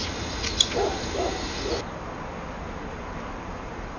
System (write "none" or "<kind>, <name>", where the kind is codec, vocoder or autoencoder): none